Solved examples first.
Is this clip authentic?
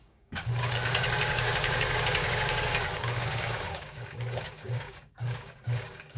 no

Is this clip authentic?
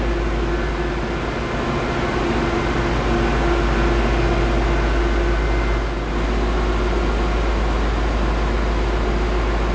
yes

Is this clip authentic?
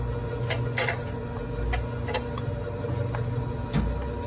yes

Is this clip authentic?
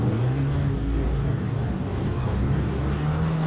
no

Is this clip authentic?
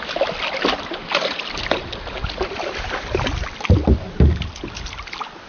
yes